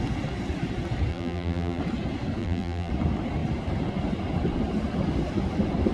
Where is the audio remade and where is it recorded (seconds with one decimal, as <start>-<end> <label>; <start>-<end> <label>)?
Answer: 0.0-1.1 recorded; 1.1-1.8 remade; 1.8-2.4 recorded; 2.4-2.9 remade; 2.9-5.9 recorded